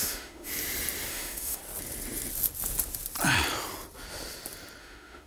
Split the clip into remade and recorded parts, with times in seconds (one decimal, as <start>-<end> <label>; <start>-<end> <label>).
0.0-0.5 remade; 0.5-1.1 recorded; 1.1-1.6 remade; 1.6-4.8 recorded; 4.8-5.3 remade